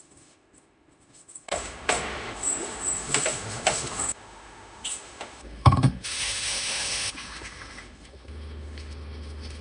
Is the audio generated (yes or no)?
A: yes